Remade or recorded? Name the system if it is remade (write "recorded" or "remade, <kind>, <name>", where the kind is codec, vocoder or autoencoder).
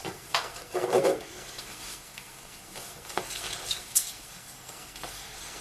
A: remade, codec, SNAC